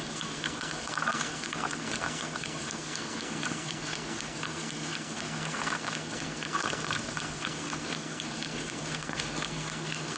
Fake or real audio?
fake